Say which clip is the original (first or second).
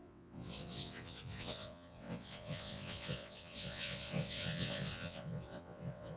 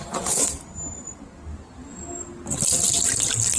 second